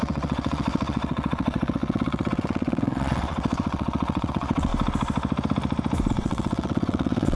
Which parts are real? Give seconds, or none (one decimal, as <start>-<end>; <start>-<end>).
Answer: 4.7-6.1